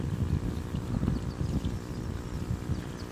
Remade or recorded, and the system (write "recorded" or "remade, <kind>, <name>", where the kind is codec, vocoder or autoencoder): recorded